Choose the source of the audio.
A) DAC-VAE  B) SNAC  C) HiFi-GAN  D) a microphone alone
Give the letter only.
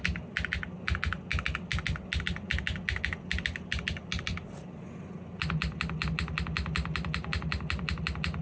D